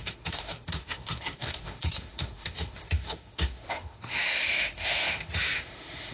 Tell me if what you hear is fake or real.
fake